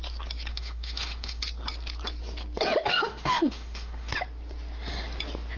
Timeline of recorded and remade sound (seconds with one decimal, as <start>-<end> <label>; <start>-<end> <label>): 0.0-0.5 recorded; 0.5-1.4 remade; 1.4-2.9 recorded; 2.9-4.1 remade; 4.1-5.6 recorded